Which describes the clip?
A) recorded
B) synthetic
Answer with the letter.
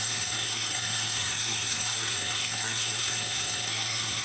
B